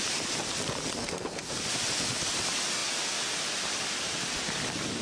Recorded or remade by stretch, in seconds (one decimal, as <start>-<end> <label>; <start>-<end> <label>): 0.0-1.0 recorded; 1.0-1.6 remade; 1.6-5.0 recorded